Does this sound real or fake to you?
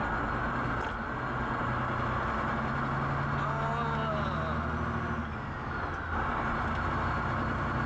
real